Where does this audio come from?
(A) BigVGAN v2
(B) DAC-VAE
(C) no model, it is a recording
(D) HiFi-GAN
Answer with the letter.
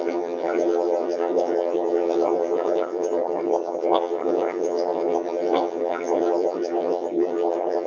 D